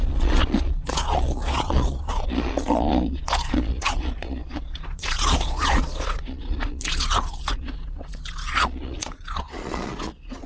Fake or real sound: fake